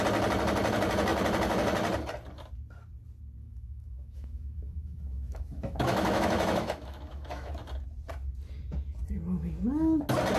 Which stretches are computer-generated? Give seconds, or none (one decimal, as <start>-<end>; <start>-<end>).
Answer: 3.4-7.5